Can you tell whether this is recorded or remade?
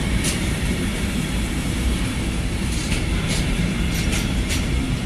remade